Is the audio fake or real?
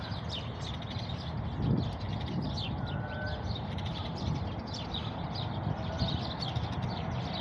real